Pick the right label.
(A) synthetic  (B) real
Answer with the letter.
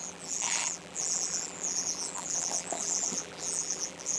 A